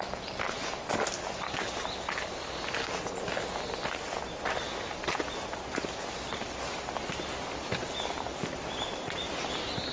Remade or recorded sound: recorded